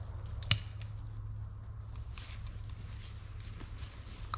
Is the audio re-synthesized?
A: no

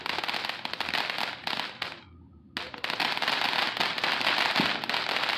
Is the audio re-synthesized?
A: no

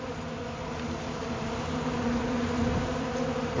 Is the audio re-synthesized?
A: no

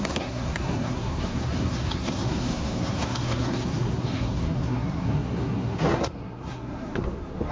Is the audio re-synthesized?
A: yes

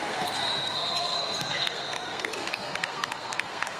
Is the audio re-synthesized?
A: yes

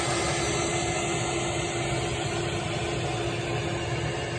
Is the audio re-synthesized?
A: no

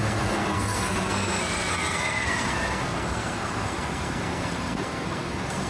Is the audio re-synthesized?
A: yes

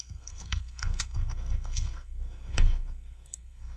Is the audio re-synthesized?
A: yes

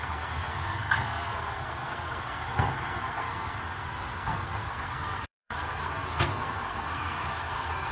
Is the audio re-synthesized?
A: yes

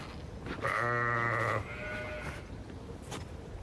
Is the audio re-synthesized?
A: no